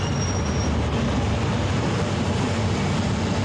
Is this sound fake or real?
real